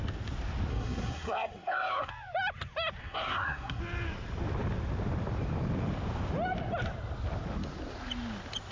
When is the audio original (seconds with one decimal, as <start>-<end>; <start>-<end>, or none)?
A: 0.0-0.7; 2.1-3.0; 3.8-8.7